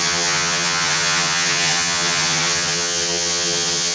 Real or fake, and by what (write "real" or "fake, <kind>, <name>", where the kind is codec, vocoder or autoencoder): fake, vocoder, HiFi-GAN